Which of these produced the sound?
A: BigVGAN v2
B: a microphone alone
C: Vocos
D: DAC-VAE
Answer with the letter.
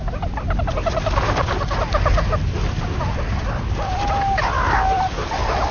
B